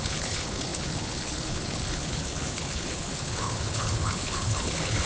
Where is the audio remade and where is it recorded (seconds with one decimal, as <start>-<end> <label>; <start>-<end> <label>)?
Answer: 0.0-5.1 remade